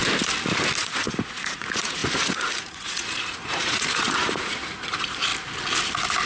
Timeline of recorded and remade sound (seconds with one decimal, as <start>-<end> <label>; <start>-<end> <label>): 0.0-0.8 recorded; 0.8-5.3 remade; 5.3-6.3 recorded